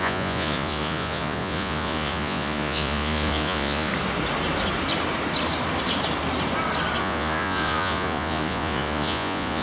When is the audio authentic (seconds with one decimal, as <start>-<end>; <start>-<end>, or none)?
3.9-7.0